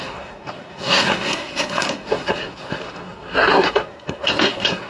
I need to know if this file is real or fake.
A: fake